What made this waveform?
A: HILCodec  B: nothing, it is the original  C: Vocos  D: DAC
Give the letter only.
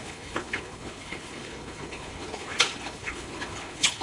A